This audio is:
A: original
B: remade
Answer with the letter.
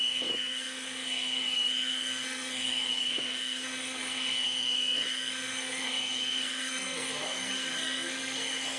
B